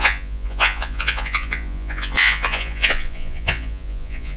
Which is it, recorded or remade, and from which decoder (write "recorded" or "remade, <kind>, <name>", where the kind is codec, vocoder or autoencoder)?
remade, vocoder, Vocos